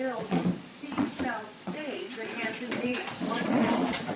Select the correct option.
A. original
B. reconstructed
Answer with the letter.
B